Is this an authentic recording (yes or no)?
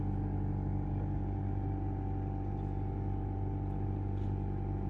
yes